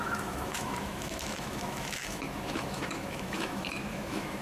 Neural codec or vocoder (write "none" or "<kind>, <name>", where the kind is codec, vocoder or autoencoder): autoencoder, DAC-VAE